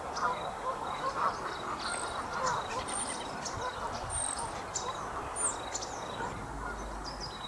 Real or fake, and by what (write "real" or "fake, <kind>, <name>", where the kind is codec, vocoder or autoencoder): real